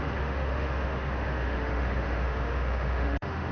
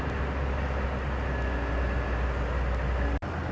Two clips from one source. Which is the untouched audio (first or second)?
second